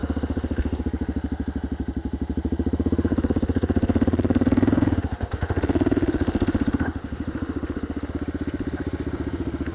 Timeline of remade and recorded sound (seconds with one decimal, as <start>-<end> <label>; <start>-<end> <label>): 0.0-0.8 remade; 0.8-3.1 recorded; 3.1-8.1 remade; 8.1-9.7 recorded